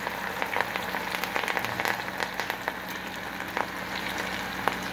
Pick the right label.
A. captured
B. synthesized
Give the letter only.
A